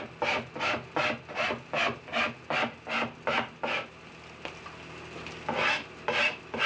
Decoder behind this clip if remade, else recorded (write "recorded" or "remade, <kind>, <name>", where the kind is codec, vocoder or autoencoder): recorded